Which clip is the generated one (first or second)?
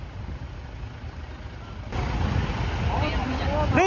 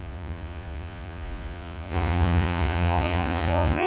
second